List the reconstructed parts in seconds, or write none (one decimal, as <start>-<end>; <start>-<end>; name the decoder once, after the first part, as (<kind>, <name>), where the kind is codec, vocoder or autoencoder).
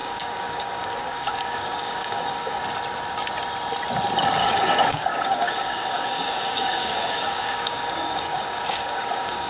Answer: 0.0-2.6 (codec, DAC); 4.4-9.5